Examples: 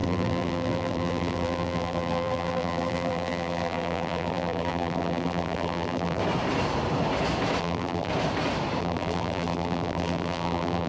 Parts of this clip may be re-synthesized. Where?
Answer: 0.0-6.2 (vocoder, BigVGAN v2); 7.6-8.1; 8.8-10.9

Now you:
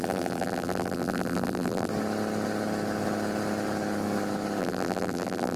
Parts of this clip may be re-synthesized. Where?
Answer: 0.0-1.9 (vocoder, BigVGAN v2); 4.6-5.6